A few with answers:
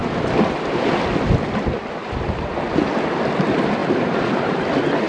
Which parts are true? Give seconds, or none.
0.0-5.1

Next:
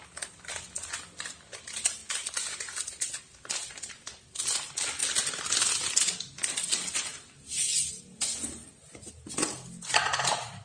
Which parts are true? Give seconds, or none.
0.0-10.6